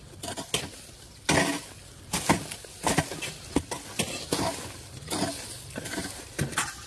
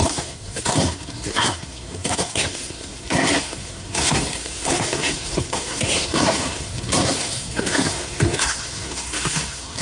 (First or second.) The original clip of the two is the first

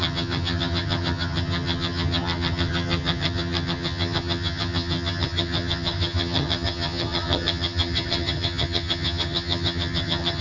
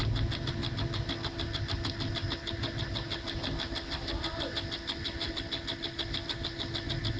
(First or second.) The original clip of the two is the second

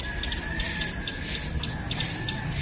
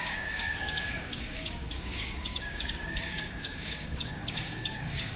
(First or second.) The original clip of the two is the first